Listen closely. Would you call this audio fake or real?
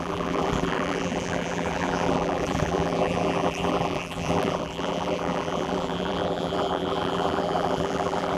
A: fake